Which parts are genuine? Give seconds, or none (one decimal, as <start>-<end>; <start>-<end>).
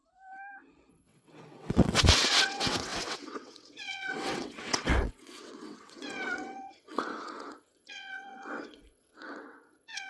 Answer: 0.0-0.9